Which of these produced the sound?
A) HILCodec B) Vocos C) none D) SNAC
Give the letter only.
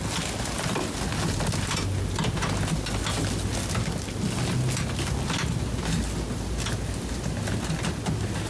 C